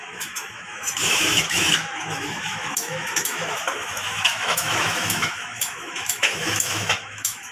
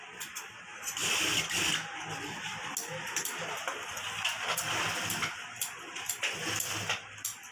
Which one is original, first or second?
second